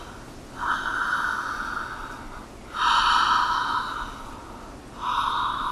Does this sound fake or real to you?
real